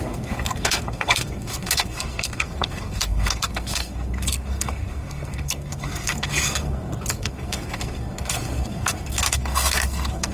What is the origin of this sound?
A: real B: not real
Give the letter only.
B